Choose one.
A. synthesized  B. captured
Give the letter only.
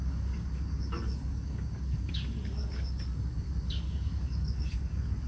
A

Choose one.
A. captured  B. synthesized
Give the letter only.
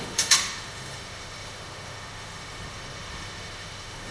B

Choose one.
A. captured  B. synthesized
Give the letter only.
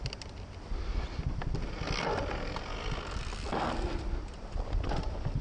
A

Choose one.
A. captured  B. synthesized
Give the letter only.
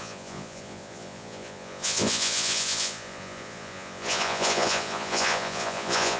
B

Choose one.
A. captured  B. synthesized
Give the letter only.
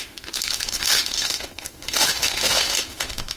B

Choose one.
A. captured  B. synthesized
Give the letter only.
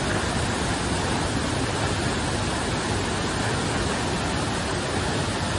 A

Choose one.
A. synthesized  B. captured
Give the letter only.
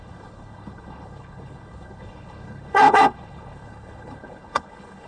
A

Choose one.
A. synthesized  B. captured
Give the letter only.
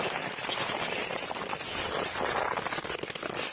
B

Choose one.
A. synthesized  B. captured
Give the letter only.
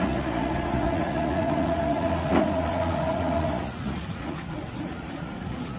A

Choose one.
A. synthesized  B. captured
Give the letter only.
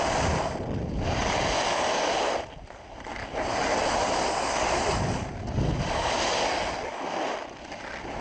B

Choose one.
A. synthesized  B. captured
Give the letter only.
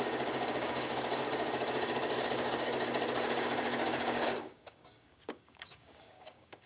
A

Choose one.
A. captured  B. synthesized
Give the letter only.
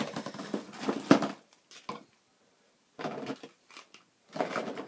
A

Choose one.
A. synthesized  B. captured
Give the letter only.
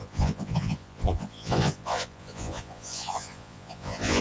A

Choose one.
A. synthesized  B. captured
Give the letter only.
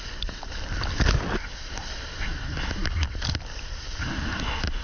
B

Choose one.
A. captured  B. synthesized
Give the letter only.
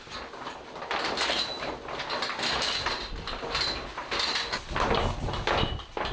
A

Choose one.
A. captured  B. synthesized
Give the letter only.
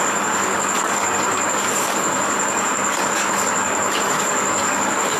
B